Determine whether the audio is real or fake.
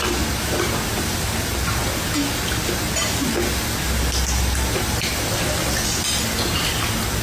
real